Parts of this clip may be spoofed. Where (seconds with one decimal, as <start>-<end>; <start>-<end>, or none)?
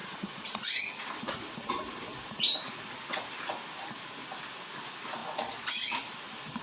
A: 0.0-0.6